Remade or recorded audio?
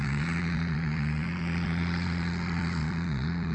remade